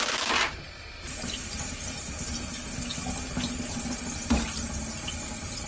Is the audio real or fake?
real